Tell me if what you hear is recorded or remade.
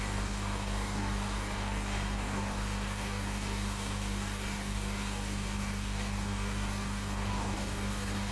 remade